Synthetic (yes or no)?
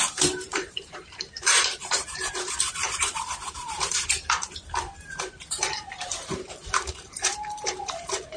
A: yes